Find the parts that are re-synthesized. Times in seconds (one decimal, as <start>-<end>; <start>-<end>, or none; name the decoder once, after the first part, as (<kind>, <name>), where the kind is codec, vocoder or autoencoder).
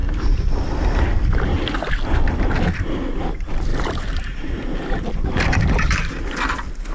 3.7-6.1 (vocoder, BigVGAN v2)